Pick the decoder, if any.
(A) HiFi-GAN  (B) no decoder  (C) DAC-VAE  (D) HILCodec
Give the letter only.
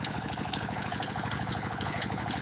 D